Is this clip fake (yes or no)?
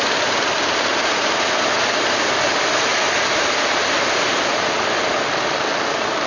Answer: no